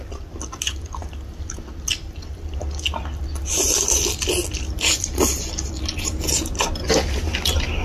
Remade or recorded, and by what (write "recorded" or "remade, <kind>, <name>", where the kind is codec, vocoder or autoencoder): recorded